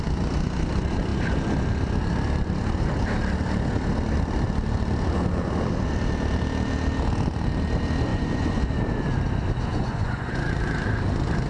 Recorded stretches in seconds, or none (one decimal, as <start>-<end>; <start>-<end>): 0.0-8.1; 8.6-9.7; 10.5-11.5

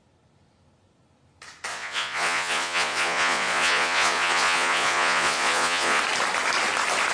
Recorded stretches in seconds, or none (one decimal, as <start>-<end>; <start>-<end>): 0.0-1.7; 6.0-7.1